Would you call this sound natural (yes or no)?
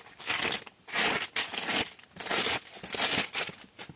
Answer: yes